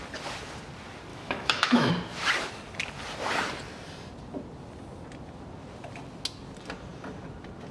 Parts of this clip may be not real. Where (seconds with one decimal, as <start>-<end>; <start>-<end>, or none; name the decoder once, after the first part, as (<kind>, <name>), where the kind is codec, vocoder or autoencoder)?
1.1-1.9 (autoencoder, DAC-VAE)